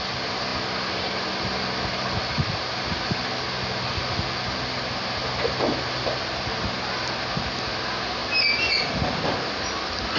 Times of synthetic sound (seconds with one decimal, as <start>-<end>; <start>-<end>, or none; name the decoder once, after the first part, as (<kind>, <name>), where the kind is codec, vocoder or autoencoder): none